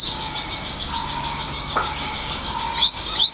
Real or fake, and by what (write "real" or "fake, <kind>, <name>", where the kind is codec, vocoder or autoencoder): fake, codec, DAC